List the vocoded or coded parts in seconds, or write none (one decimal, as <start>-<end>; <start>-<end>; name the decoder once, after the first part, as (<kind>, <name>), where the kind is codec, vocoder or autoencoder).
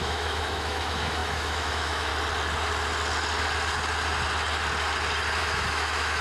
0.0-2.1 (autoencoder, DAC-VAE); 5.4-6.2